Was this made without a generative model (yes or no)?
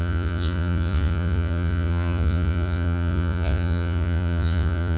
no